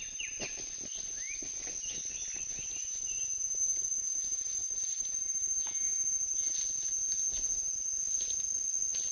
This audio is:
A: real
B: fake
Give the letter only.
A